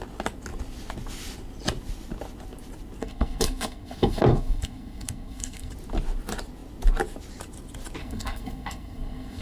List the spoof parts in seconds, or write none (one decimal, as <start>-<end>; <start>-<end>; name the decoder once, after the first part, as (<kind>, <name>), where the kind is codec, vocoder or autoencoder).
3.0-5.7 (codec, SNAC); 8.0-9.4